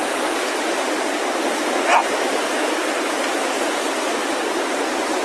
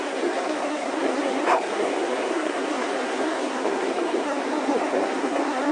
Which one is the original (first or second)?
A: first